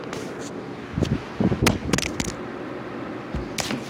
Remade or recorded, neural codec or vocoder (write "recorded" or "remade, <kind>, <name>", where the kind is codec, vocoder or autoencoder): recorded